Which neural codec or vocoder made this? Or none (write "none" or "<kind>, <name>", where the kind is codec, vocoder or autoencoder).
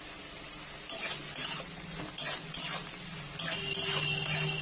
none